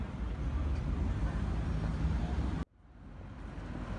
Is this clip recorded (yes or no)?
yes